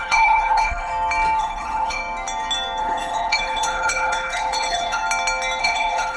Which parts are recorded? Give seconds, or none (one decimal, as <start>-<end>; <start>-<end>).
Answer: 0.9-1.4; 2.0-2.8; 5.0-5.6